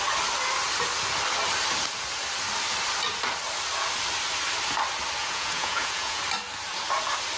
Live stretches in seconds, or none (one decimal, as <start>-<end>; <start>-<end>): 0.0-5.2; 6.2-7.4